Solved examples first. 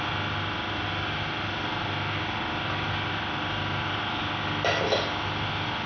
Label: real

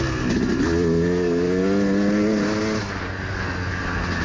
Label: real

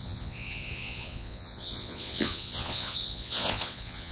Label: fake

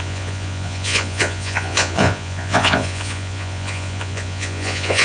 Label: fake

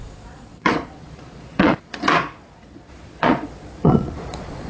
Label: fake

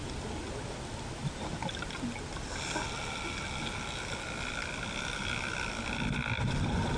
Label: real